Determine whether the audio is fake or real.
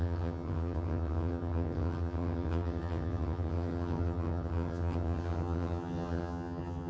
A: fake